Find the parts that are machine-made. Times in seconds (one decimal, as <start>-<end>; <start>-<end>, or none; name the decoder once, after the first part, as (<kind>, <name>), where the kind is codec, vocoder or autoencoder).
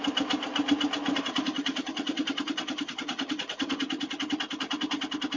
1.0-4.2 (vocoder, Vocos)